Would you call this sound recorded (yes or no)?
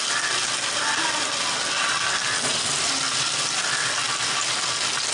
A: yes